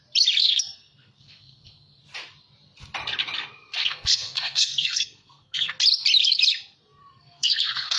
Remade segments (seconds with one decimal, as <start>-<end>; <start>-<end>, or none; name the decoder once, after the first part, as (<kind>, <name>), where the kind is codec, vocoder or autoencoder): 0.4-2.0 (codec, SNAC); 3.8-5.7; 7.0-8.0

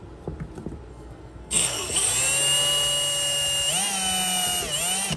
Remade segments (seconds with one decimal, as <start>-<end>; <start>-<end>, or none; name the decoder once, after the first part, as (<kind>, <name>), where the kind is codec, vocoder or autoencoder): 0.9-2.1 (codec, SNAC)

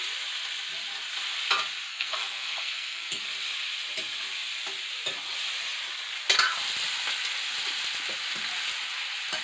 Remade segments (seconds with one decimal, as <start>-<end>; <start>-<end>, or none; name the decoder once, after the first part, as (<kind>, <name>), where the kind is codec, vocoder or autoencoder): 1.9-3.2 (codec, SNAC)

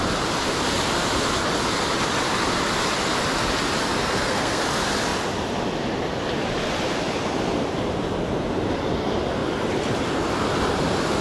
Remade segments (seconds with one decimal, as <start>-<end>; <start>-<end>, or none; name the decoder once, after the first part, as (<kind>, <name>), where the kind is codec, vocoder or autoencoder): 4.0-4.6 (codec, SNAC)

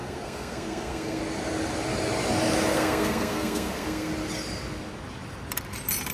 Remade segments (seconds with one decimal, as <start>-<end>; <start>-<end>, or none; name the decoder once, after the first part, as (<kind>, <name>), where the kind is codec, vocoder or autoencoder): 0.0-1.2 (codec, SNAC); 2.7-4.1

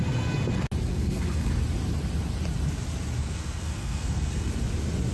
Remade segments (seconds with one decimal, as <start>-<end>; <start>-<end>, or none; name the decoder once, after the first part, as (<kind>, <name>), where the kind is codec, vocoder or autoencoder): 0.9-1.5 (codec, SNAC); 3.2-4.5